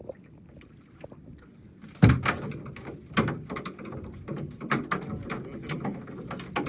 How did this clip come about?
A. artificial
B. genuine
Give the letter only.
B